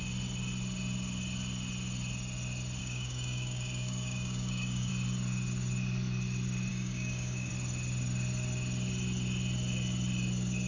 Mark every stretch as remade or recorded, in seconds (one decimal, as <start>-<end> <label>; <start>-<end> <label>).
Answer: 0.0-2.8 recorded; 2.8-4.9 remade; 4.9-6.7 recorded; 6.7-7.5 remade; 7.5-10.7 recorded